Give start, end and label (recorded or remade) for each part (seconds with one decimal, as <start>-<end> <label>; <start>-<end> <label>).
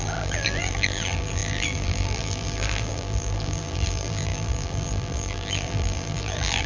0.0-6.7 remade